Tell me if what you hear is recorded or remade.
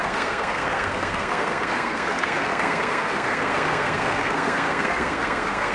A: remade